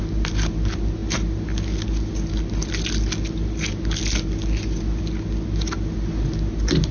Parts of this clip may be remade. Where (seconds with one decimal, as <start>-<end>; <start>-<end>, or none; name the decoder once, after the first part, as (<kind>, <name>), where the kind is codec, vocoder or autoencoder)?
none